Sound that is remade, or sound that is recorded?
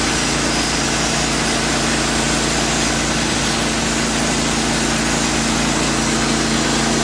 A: recorded